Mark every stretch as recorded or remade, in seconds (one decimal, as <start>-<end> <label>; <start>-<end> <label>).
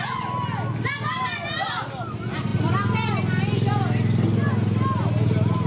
0.0-5.7 recorded